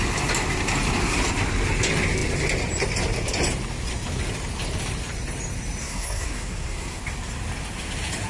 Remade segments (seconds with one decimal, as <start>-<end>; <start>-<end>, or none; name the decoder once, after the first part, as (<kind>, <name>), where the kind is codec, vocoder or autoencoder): 5.8-7.0 (codec, SNAC)